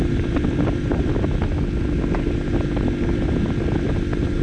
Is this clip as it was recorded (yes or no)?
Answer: yes